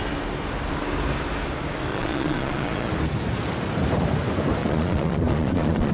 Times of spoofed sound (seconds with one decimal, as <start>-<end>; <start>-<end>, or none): 1.9-2.9; 4.6-5.9